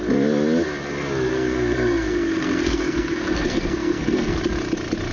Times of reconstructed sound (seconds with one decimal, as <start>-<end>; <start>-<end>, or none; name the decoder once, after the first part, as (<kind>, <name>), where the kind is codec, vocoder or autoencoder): 1.3-4.4 (codec, SNAC)

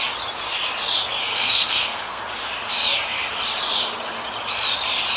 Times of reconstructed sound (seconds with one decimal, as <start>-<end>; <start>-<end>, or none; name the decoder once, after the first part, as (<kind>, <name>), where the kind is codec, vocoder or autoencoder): 1.3-2.2 (codec, SNAC)

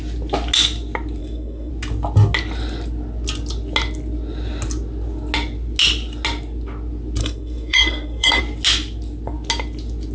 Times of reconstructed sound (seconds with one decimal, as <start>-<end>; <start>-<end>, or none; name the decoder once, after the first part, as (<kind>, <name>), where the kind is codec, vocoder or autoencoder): 1.2-1.7 (codec, SNAC); 7.2-8.4

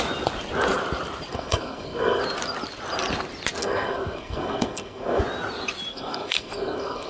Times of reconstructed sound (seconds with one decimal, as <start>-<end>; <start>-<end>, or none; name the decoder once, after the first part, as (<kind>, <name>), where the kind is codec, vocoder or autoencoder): 1.3-2.2 (codec, SNAC); 3.6-5.2; 5.9-7.1